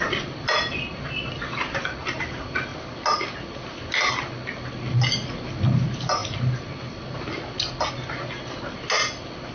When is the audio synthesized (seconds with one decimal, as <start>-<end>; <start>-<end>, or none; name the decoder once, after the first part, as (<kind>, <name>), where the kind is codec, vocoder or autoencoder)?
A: none